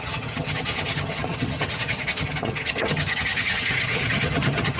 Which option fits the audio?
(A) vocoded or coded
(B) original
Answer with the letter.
A